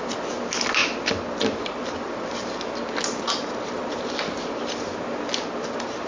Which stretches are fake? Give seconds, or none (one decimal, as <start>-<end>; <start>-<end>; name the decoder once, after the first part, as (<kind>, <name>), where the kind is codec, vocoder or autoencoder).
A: none